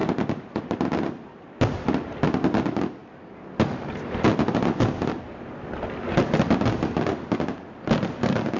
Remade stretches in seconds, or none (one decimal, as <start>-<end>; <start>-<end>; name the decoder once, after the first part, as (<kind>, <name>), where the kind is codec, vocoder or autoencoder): none